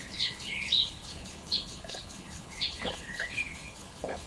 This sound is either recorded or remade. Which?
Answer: remade